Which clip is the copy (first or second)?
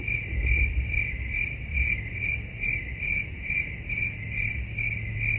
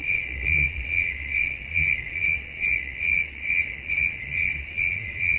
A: second